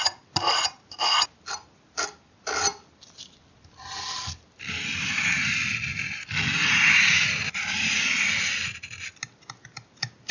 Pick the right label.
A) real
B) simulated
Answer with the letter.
A